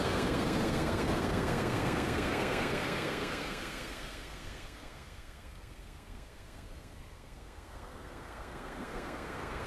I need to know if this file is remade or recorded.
remade